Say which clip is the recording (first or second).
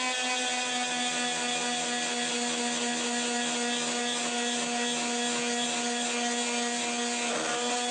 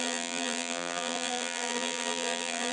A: first